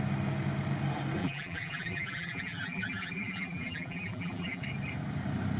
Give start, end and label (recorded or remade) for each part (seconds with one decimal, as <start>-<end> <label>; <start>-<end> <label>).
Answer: 0.0-1.2 recorded; 1.2-4.6 remade; 4.6-5.6 recorded

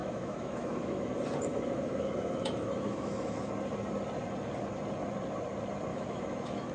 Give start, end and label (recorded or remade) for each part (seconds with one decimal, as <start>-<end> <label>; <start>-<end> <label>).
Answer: 0.0-1.1 remade; 1.1-1.5 recorded; 1.5-3.5 remade; 3.5-5.9 recorded; 5.9-6.7 remade